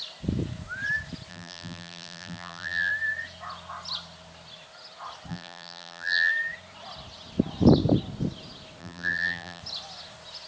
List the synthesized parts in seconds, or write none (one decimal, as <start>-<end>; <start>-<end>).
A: 1.3-2.9; 5.3-6.3; 8.8-9.6